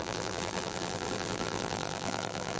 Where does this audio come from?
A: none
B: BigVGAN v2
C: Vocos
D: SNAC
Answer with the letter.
B